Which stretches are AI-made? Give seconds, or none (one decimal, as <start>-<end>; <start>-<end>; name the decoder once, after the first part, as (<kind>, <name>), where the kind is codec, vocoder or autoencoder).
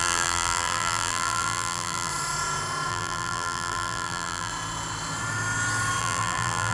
0.0-2.1 (vocoder, BigVGAN v2); 2.9-4.5; 6.0-6.7